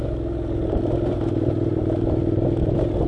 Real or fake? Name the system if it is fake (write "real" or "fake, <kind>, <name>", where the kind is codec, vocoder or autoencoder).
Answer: real